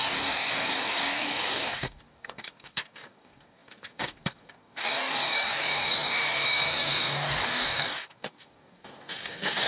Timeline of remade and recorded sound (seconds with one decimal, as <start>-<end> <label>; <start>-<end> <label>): 0.0-9.7 remade